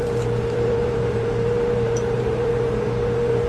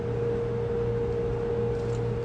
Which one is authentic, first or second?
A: second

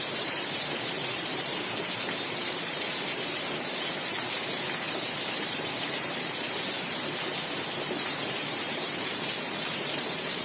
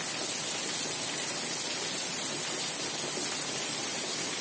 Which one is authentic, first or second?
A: second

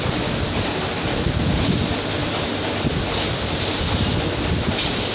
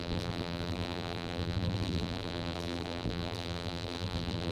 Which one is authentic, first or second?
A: first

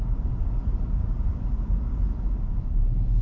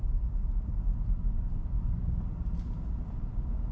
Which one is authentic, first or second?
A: second